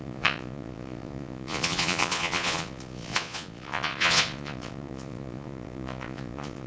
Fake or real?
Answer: fake